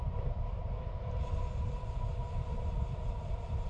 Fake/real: fake